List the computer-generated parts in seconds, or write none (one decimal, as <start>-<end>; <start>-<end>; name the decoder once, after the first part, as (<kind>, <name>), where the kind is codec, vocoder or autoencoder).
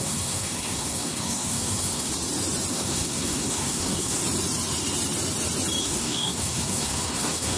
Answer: 0.0-2.1 (codec, SNAC); 2.7-4.2; 5.8-7.6